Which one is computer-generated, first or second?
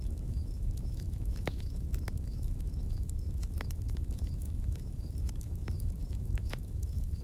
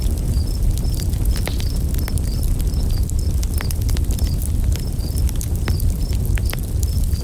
first